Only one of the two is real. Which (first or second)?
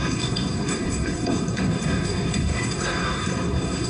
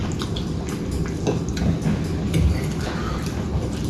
second